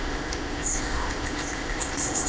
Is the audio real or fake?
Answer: fake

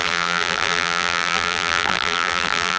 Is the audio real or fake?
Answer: fake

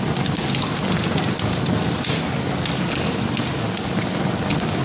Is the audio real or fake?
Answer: real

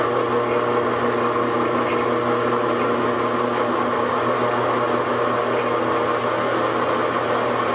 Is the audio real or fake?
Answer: real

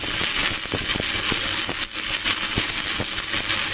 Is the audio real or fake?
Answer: real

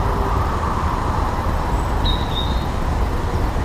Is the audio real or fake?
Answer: real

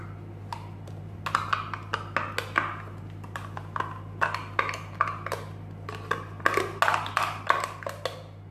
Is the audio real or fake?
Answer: real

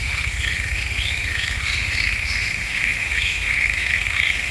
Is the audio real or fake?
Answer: fake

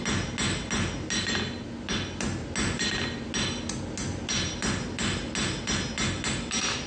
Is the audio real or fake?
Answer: real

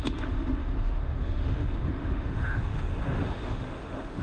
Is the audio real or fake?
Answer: fake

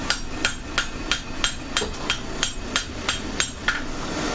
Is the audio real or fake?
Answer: real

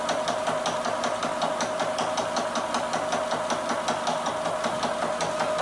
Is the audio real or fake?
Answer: real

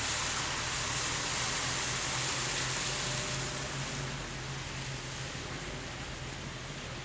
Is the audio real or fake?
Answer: real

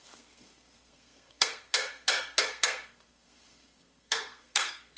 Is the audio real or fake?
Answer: fake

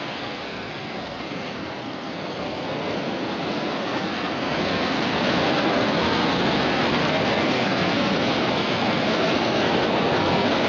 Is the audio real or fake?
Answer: fake